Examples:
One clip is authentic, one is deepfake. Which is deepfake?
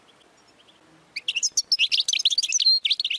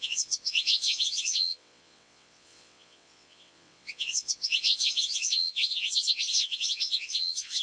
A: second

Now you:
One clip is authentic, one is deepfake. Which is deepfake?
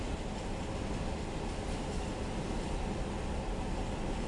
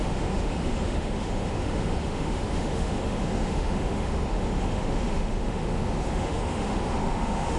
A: second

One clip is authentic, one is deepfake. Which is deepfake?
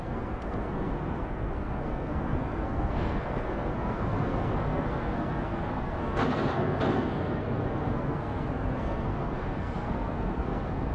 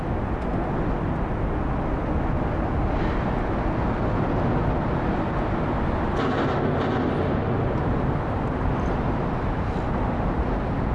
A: first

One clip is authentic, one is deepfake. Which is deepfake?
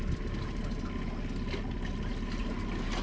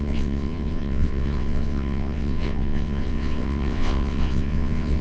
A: second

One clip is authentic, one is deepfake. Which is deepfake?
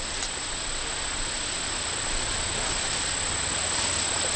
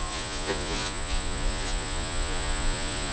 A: second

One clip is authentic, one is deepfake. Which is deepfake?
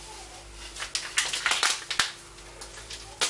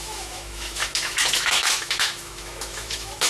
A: second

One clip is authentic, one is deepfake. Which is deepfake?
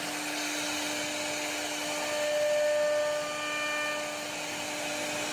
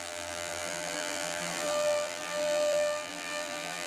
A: second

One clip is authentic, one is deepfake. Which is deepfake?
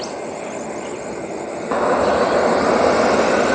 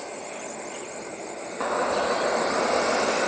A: second